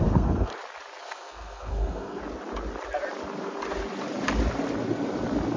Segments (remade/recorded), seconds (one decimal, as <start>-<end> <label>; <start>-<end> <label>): 0.0-0.5 remade; 0.5-1.0 recorded; 1.0-2.2 remade; 2.2-5.6 recorded